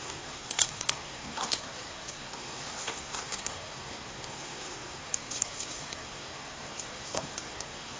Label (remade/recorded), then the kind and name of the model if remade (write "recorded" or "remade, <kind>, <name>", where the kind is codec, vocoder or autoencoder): remade, codec, SNAC